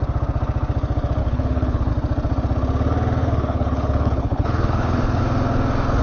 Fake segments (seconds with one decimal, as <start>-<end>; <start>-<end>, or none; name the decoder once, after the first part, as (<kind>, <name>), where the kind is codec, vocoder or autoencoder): 1.2-1.9 (codec, HILCodec); 3.2-5.2